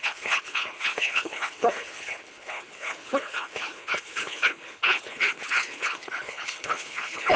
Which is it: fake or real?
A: fake